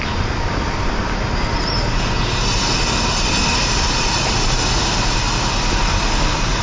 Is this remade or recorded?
recorded